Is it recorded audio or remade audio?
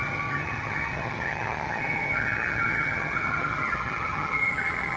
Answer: remade